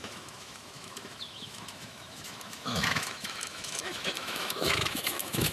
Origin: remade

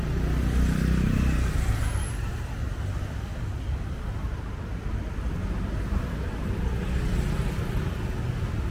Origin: recorded